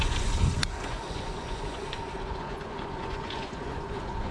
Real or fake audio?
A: fake